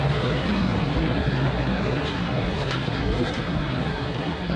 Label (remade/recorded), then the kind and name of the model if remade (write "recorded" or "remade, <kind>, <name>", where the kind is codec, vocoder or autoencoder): remade, codec, SNAC